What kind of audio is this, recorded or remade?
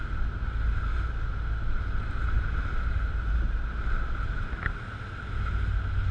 recorded